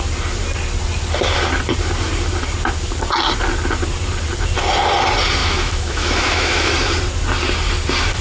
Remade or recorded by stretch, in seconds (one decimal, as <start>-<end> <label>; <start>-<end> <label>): 0.0-5.4 recorded; 5.4-6.7 remade; 6.7-8.2 recorded